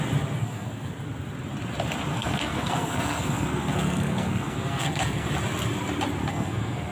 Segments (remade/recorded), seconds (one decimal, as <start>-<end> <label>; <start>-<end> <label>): 0.0-0.4 recorded; 0.4-0.9 remade; 0.9-2.1 recorded; 2.1-5.3 remade; 5.3-6.2 recorded; 6.2-6.9 remade